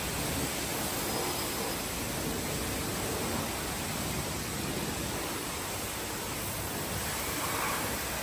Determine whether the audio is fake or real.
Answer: real